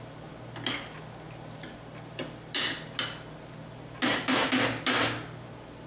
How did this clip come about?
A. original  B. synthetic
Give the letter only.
A